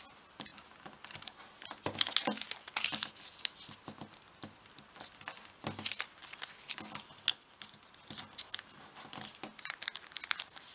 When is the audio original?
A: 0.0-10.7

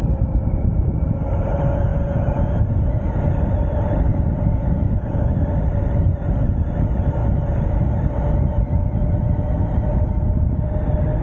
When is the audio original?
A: 0.0-1.9; 2.5-4.1; 5.2-11.2

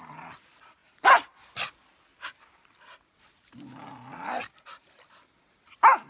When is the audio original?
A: 0.0-6.1

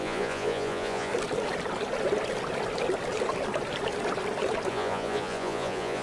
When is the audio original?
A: 1.1-4.7

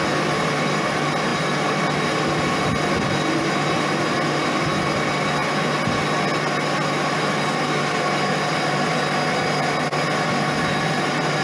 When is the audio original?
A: 0.0-11.4

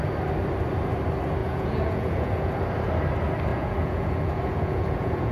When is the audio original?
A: 0.0-1.4; 2.5-3.5

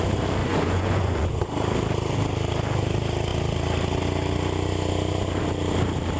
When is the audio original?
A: 0.0-0.4; 1.4-6.2